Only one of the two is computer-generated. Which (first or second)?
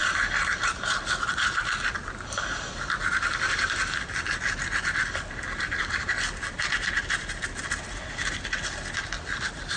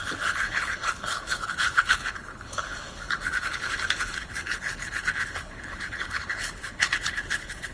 second